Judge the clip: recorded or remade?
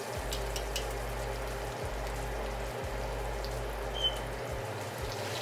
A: recorded